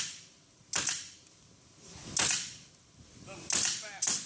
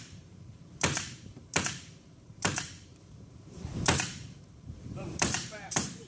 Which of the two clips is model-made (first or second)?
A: second